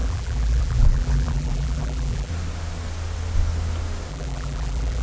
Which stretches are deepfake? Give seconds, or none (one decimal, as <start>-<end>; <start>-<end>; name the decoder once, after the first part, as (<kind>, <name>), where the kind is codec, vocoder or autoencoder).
0.0-2.3 (vocoder, BigVGAN v2); 4.1-5.0

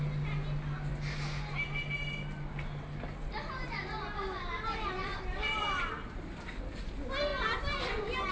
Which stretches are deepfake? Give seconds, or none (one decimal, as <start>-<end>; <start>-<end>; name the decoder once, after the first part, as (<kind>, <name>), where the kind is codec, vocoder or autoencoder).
none

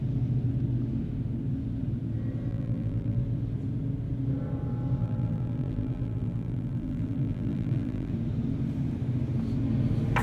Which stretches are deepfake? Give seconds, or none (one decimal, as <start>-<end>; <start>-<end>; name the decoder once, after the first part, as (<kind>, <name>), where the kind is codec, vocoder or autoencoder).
2.5-3.2 (vocoder, BigVGAN v2); 5.0-8.1